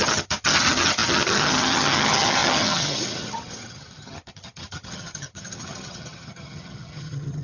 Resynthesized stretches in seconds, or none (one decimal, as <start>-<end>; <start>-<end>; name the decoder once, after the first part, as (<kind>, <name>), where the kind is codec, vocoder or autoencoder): 0.0-7.4 (vocoder, HiFi-GAN)